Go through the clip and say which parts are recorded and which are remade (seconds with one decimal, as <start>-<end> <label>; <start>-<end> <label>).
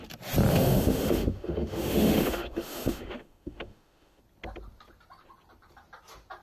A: 0.0-0.5 recorded; 0.5-4.2 remade; 4.2-6.4 recorded